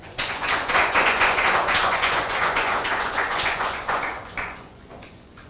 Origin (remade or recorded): remade